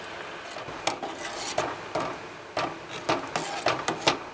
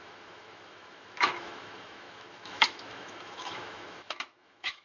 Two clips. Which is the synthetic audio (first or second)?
second